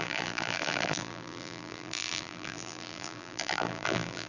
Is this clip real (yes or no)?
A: no